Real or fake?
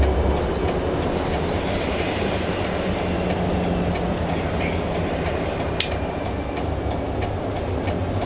fake